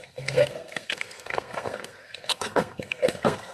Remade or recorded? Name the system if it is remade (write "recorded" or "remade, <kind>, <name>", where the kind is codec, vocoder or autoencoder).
remade, codec, SNAC